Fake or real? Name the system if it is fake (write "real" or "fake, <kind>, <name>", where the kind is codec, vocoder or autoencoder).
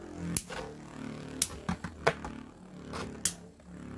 real